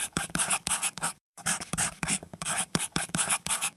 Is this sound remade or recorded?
remade